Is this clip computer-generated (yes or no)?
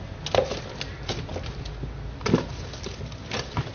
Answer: no